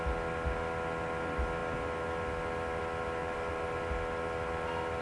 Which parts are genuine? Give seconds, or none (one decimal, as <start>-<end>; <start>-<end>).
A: 0.0-3.2; 3.8-5.0